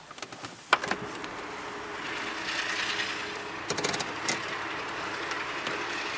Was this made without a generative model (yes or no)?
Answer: yes